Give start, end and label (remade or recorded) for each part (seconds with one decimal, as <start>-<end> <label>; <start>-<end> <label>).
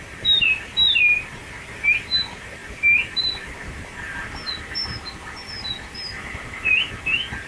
0.0-1.4 remade; 1.4-2.2 recorded; 2.2-7.5 remade